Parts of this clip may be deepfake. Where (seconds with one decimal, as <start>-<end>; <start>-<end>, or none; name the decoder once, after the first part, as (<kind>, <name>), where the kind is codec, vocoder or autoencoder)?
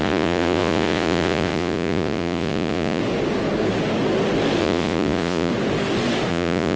0.0-3.0 (vocoder, Vocos); 4.6-5.5; 6.3-6.8